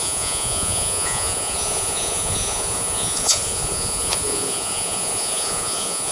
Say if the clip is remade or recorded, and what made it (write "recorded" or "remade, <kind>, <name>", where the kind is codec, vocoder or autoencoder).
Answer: remade, vocoder, Vocos